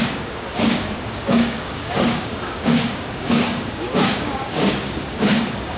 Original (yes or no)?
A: no